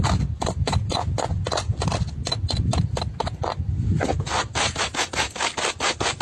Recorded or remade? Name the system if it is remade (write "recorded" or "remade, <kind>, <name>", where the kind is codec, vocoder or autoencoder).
recorded